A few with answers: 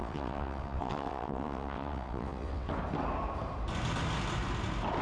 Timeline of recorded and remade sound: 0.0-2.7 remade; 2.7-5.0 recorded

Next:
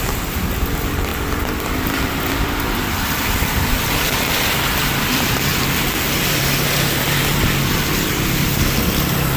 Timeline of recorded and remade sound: 0.0-9.4 remade

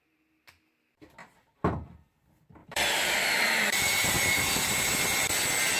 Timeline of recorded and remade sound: 0.0-1.2 recorded; 1.2-1.9 remade; 1.9-2.6 recorded; 2.6-4.9 remade; 4.9-5.8 recorded